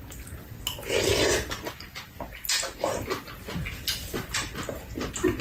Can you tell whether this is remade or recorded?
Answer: recorded